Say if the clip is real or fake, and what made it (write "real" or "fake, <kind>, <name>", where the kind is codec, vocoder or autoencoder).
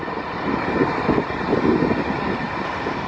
real